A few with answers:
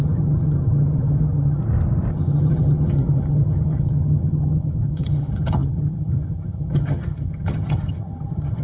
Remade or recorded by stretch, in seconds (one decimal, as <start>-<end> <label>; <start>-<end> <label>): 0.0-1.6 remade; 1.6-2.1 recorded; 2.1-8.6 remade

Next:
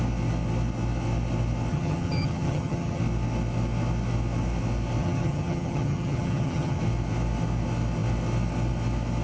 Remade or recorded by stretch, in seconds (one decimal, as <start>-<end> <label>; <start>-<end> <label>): 0.0-1.7 recorded; 1.7-3.0 remade; 3.0-5.0 recorded; 5.0-6.8 remade; 6.8-9.2 recorded

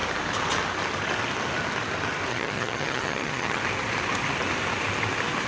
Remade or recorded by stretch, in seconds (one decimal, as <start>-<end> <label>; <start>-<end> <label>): 0.0-2.3 recorded; 2.3-3.6 remade; 3.6-5.5 recorded

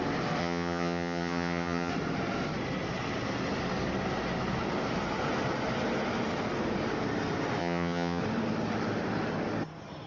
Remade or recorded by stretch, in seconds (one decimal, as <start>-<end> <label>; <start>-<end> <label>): 0.0-0.4 recorded; 0.4-1.9 remade; 1.9-7.6 recorded; 7.6-8.2 remade; 8.2-10.1 recorded

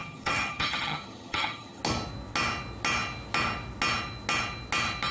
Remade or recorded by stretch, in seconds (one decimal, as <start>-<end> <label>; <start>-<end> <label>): 0.0-1.8 remade; 1.8-5.1 recorded